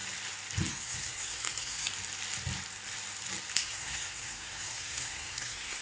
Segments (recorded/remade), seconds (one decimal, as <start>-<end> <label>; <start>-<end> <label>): 0.0-0.7 recorded; 0.7-1.9 remade; 1.9-3.6 recorded; 3.6-5.8 remade